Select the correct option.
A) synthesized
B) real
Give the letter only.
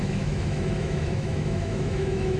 A